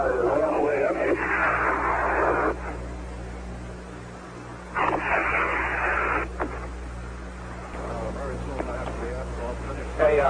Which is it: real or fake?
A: real